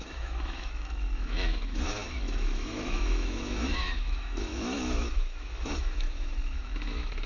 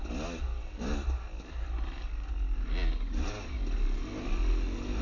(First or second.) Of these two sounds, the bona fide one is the second